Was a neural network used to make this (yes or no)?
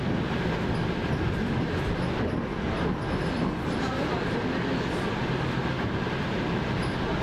no